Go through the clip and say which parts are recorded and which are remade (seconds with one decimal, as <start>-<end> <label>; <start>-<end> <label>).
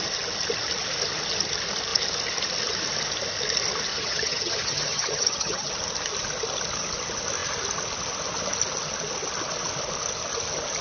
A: 0.0-3.9 recorded; 3.9-5.7 remade; 5.7-10.8 recorded